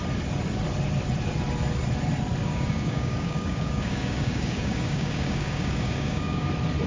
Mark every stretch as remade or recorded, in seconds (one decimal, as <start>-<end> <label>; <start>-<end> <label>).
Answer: 0.0-2.4 recorded; 2.4-6.5 remade; 6.5-6.9 recorded